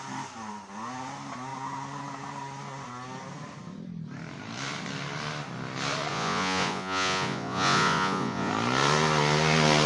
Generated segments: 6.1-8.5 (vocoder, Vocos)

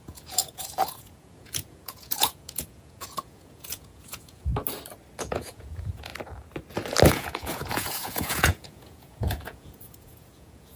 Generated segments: 0.0-4.5 (vocoder, Vocos); 5.2-6.1; 7.1-10.8

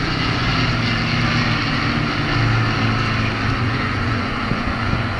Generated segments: 0.0-0.5 (vocoder, Vocos); 3.6-5.2

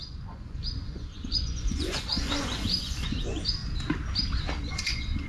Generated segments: 0.0-3.6 (vocoder, Vocos); 4.6-5.3

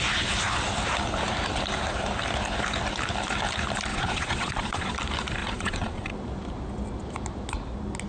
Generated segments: 3.9-4.9 (vocoder, Vocos); 5.4-6.1

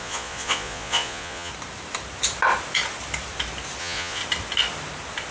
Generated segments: 0.0-1.5 (vocoder, Vocos); 3.8-4.2

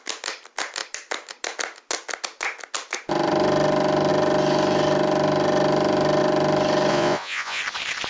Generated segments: 6.9-7.6 (vocoder, Vocos)